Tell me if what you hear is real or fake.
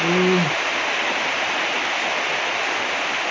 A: real